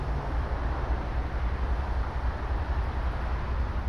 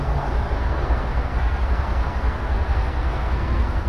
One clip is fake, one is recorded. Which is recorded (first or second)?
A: first